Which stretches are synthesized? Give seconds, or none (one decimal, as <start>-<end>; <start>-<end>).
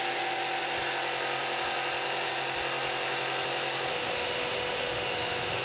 3.9-5.6